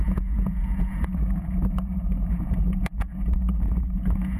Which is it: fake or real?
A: fake